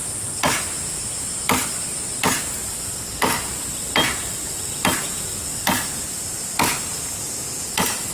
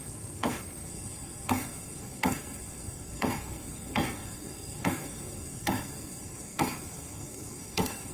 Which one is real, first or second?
first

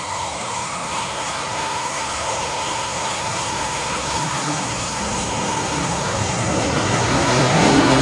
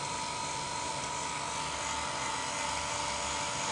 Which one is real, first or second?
second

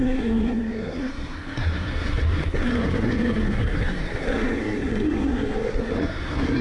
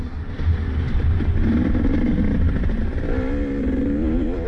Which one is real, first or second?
second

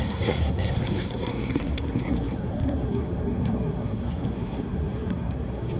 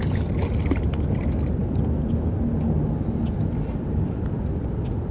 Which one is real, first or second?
second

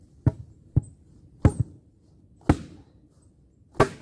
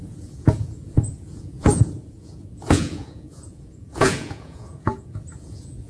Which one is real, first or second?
first